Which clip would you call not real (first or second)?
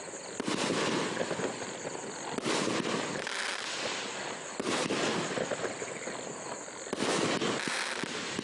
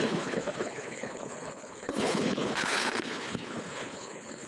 second